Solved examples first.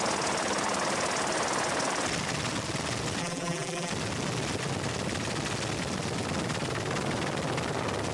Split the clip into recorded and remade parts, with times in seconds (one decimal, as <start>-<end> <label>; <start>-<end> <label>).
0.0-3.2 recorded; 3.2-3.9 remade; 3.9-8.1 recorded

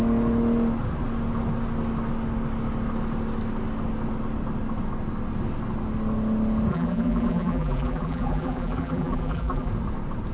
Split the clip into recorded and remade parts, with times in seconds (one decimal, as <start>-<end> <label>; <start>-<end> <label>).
0.0-6.7 recorded; 6.7-9.7 remade; 9.7-10.3 recorded

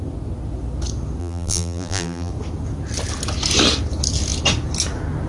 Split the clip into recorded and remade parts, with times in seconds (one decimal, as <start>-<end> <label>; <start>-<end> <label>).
0.0-1.2 recorded; 1.2-2.3 remade; 2.3-5.3 recorded

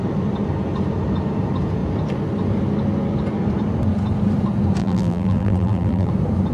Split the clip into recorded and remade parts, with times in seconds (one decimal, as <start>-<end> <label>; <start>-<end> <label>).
0.0-4.8 recorded; 4.8-6.1 remade; 6.1-6.5 recorded

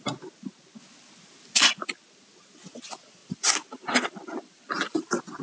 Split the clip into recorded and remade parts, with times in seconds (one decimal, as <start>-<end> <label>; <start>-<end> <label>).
0.0-3.2 recorded; 3.2-5.4 remade